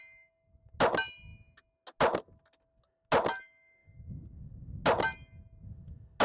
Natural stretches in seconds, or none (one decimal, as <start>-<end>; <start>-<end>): 0.0-6.2